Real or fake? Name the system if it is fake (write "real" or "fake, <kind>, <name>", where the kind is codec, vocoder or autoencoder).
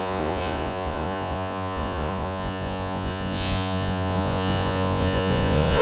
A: fake, vocoder, Vocos